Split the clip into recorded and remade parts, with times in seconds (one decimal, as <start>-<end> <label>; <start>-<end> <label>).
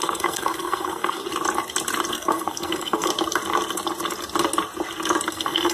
0.0-1.2 remade; 1.2-2.1 recorded; 2.1-3.1 remade; 3.1-5.3 recorded; 5.3-5.7 remade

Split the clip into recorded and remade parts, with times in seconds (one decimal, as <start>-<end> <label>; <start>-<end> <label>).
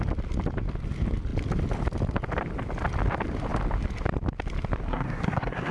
0.0-4.9 recorded; 4.9-5.7 remade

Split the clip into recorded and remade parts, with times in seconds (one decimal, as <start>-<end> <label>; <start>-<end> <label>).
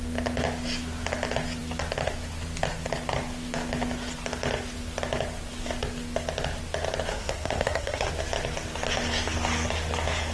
0.0-7.1 recorded; 7.1-8.1 remade; 8.1-10.3 recorded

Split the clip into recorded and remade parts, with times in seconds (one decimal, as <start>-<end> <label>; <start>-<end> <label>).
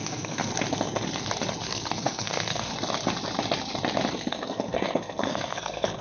0.0-0.5 remade; 0.5-1.6 recorded; 1.6-2.7 remade; 2.7-4.1 recorded; 4.1-6.0 remade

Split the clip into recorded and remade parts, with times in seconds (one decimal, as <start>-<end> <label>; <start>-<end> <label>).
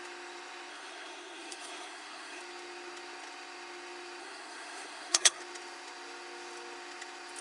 0.0-0.7 recorded; 0.7-2.4 remade; 2.4-4.2 recorded; 4.2-5.4 remade; 5.4-7.4 recorded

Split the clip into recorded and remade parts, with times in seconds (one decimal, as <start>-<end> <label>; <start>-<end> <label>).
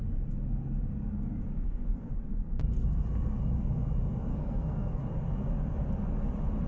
0.0-1.5 recorded; 1.5-2.1 remade; 2.1-4.3 recorded; 4.3-5.0 remade; 5.0-6.7 recorded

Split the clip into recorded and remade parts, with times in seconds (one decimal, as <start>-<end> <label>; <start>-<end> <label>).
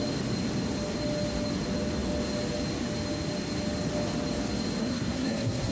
0.0-4.8 recorded; 4.8-5.7 remade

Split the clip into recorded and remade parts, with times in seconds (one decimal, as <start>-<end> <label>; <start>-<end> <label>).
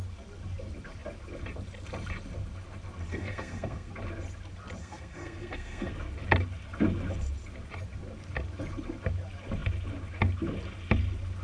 0.0-3.1 recorded; 3.1-3.9 remade; 3.9-4.8 recorded; 4.8-5.9 remade; 5.9-11.4 recorded